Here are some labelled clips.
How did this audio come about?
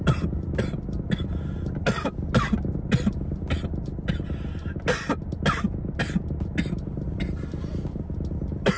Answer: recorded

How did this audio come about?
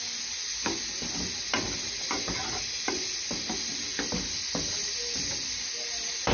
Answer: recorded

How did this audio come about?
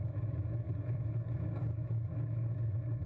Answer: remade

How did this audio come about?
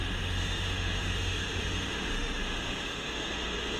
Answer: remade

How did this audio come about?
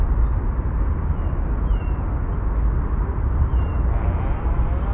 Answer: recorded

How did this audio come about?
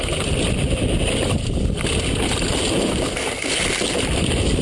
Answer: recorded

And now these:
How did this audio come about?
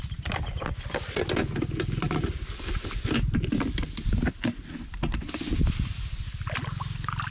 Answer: recorded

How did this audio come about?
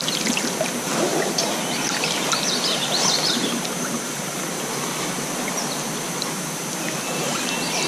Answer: recorded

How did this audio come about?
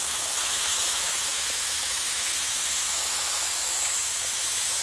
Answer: remade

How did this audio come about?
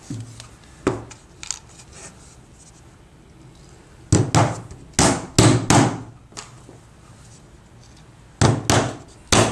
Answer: recorded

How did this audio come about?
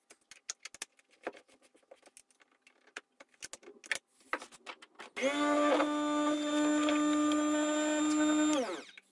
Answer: recorded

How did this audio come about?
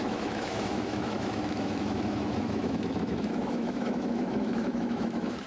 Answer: remade